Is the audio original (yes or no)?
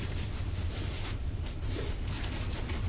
no